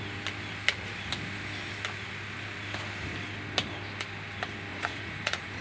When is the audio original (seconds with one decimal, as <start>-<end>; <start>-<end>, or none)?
0.0-4.7